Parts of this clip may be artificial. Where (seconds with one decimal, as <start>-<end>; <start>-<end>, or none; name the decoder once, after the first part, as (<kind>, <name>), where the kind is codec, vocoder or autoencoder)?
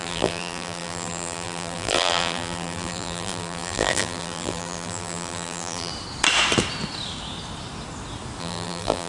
0.0-5.9 (vocoder, BigVGAN v2); 8.4-9.1